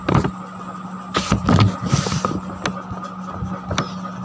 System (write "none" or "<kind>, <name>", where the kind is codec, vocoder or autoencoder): none